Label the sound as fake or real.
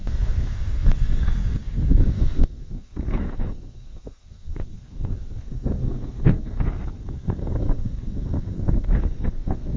fake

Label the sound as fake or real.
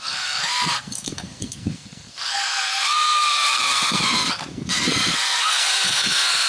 fake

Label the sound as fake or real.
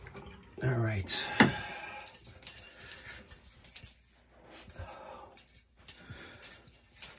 real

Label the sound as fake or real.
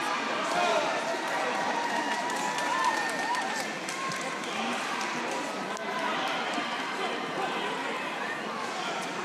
fake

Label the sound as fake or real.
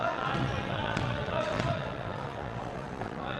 fake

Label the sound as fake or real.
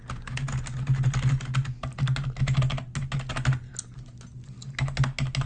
real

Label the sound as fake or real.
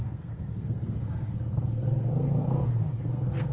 fake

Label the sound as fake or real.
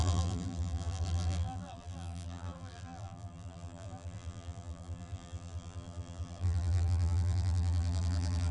fake